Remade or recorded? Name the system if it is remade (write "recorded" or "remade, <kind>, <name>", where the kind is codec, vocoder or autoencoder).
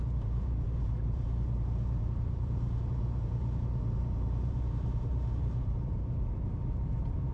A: remade, vocoder, BigVGAN v2